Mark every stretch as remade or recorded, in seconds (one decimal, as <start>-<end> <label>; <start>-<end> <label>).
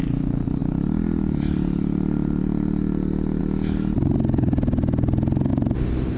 0.0-5.5 recorded; 5.5-6.2 remade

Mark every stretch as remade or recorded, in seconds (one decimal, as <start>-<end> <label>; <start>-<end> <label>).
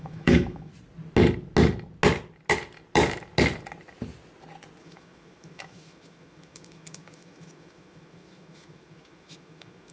0.0-0.7 remade; 0.7-4.8 recorded; 4.8-9.9 remade